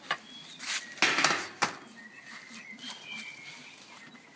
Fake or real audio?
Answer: real